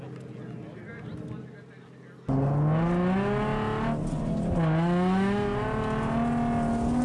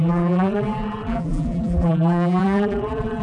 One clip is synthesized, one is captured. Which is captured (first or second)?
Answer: first